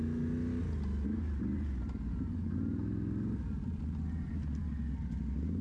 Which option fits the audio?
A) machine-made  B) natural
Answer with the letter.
B